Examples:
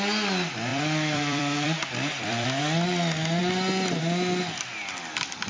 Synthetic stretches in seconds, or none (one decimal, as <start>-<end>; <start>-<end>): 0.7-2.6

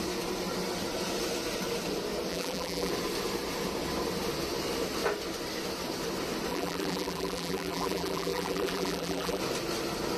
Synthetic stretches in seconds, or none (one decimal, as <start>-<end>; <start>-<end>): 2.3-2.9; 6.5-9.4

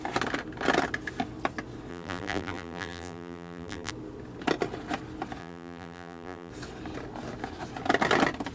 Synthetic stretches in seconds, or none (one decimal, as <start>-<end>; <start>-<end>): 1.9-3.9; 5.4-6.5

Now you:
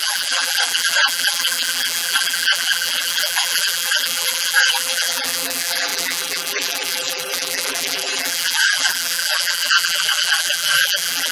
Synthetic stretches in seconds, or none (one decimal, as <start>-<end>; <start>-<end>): 0.0-11.3

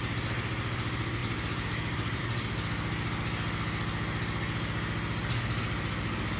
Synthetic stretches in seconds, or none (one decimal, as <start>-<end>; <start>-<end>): 1.2-2.2

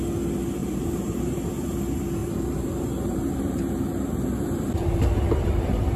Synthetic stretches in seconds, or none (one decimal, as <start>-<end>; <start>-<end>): 0.6-1.5; 2.2-6.0

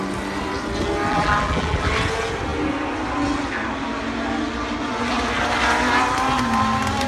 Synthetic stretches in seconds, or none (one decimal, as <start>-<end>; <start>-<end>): 1.1-1.9

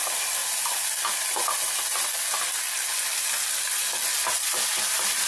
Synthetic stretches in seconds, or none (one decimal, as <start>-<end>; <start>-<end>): none